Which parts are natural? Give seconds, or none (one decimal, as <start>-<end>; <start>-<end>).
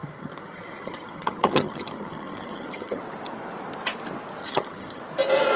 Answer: 3.0-4.4; 5.0-5.6